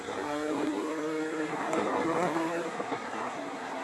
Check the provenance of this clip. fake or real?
fake